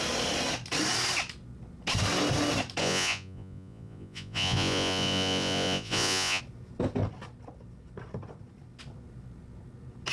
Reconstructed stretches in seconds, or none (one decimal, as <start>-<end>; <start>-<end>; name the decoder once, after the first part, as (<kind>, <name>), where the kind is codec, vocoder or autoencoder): 2.8-6.4 (vocoder, Vocos)